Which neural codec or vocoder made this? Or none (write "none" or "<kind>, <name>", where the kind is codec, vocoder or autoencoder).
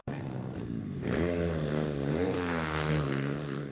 codec, SNAC